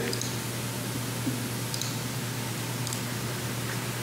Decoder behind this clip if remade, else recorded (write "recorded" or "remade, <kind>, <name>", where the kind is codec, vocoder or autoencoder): recorded